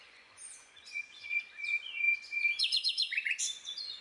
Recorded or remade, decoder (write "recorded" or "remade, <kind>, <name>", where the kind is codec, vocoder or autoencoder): remade, vocoder, Vocos